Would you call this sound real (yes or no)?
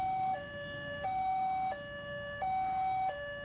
no